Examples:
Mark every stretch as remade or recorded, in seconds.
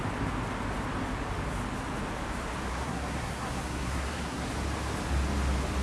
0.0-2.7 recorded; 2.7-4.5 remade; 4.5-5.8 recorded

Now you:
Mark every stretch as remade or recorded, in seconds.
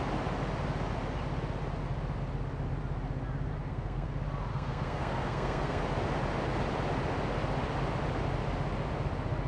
0.0-3.6 recorded; 3.6-4.1 remade; 4.1-4.5 recorded; 4.5-5.8 remade; 5.8-9.5 recorded